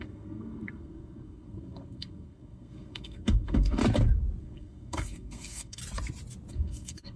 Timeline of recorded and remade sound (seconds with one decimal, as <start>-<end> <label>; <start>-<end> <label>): 0.0-3.8 remade; 3.8-4.4 recorded; 4.4-5.8 remade; 5.8-6.5 recorded; 6.5-7.2 remade